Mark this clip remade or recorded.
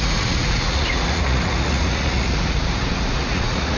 remade